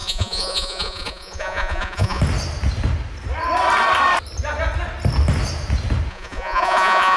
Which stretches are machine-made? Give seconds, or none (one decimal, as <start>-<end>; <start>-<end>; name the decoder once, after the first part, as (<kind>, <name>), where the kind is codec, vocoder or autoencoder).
0.0-2.2 (vocoder, Vocos); 6.1-7.2